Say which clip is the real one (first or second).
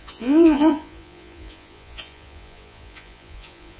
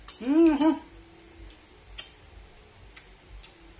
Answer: second